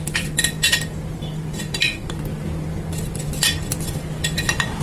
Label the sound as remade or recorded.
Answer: recorded